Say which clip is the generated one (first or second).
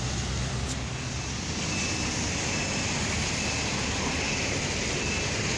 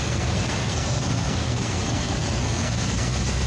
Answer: second